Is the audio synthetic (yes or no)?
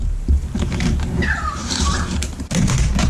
yes